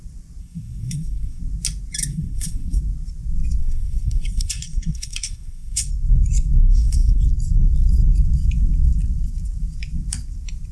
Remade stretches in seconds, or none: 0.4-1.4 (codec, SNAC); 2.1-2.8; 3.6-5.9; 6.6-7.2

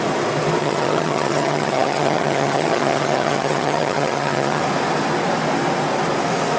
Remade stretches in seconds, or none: 0.6-4.6 (vocoder, HiFi-GAN)

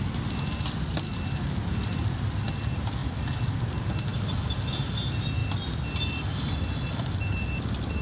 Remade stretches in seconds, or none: none

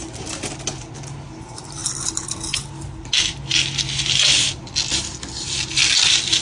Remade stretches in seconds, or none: none

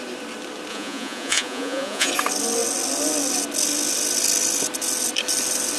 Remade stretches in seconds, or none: 0.7-2.1 (vocoder, Vocos)